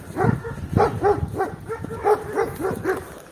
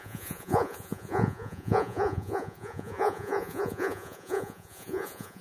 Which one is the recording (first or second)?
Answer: first